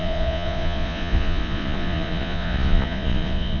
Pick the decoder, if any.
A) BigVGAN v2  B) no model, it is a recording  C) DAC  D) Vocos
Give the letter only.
D